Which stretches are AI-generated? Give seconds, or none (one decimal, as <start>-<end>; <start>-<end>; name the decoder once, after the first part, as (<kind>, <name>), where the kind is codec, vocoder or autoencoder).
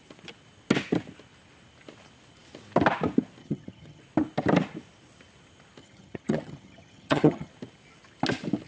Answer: 3.4-4.0 (vocoder, HiFi-GAN); 5.8-7.5